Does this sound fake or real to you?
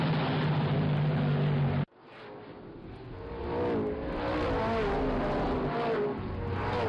real